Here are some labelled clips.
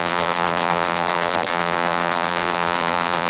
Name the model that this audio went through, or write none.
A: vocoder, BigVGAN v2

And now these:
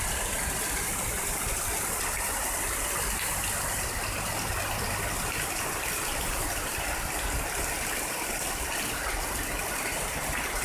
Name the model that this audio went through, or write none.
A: none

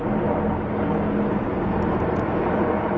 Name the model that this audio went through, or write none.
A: none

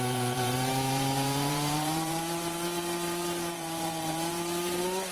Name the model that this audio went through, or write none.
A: vocoder, BigVGAN v2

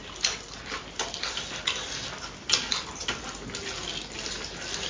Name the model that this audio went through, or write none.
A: none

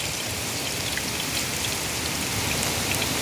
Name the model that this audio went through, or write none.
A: vocoder, BigVGAN v2